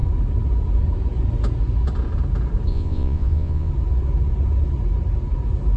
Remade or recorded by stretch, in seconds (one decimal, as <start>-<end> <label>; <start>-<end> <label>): 0.0-2.7 recorded; 2.7-3.7 remade; 3.7-5.8 recorded